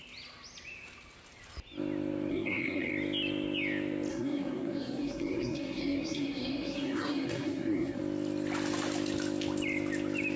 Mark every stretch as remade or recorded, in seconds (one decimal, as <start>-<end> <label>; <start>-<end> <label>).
0.0-2.3 recorded; 2.3-2.9 remade; 2.9-4.1 recorded; 4.1-8.0 remade; 8.0-10.4 recorded